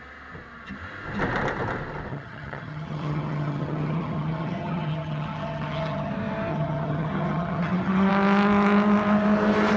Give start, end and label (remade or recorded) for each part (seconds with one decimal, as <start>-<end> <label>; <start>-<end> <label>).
0.0-2.1 recorded; 2.1-6.1 remade; 6.1-6.5 recorded; 6.5-8.1 remade; 8.1-9.8 recorded